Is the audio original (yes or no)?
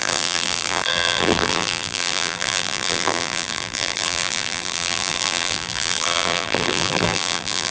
no